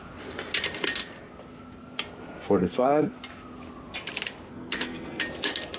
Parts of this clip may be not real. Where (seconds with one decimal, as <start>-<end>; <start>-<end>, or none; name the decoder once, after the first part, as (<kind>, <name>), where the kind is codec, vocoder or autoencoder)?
2.6-3.1 (codec, SNAC); 4.5-5.2